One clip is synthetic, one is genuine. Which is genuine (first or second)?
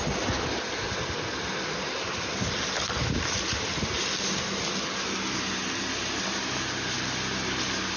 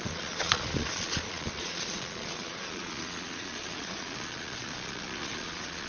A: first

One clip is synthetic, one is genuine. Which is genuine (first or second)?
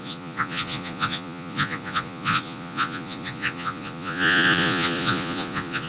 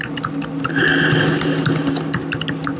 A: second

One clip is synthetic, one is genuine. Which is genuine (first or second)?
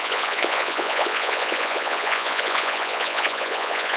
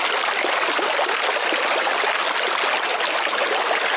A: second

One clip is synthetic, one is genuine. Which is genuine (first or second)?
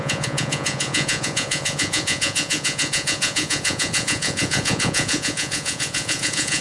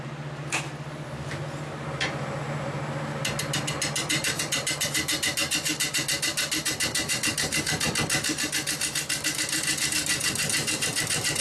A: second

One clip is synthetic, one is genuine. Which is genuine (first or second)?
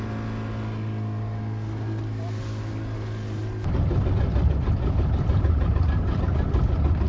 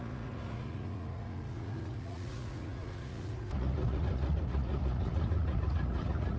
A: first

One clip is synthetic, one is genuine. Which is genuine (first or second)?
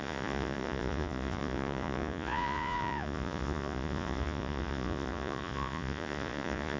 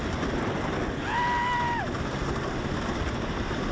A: second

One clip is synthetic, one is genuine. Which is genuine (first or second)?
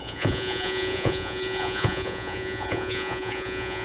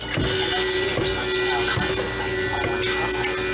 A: second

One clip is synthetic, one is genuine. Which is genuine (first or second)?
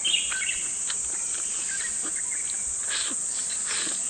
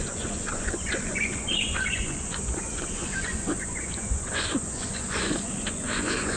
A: first